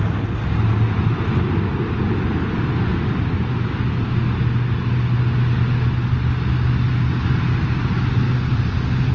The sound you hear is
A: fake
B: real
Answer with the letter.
B